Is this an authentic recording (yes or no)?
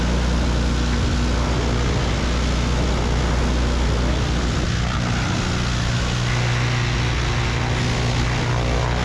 yes